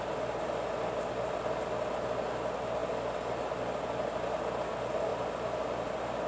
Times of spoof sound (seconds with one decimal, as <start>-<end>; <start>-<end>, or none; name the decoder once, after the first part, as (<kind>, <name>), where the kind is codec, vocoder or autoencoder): none